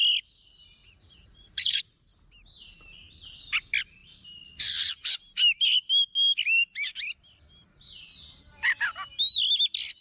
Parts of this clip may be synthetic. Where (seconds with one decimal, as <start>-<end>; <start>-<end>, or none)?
0.8-1.8